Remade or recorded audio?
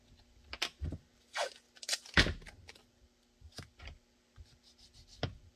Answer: recorded